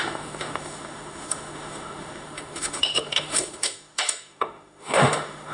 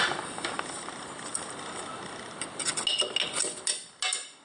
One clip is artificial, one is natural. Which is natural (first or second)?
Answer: second